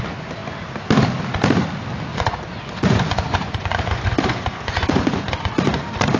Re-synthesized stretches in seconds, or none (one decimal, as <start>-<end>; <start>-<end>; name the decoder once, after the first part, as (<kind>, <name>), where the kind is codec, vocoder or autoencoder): 2.1-5.8 (vocoder, Vocos)